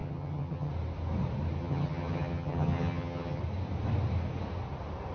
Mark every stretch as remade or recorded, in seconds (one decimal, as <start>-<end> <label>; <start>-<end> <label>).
0.0-0.7 remade; 0.7-1.6 recorded; 1.6-3.4 remade; 3.4-5.1 recorded